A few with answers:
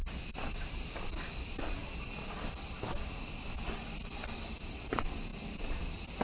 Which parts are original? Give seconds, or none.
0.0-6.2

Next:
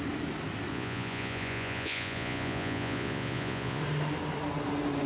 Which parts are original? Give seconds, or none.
0.0-0.7; 3.8-5.1

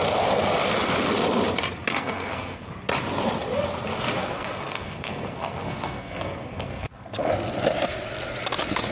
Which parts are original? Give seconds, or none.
0.0-1.9; 2.7-4.2; 7.3-8.9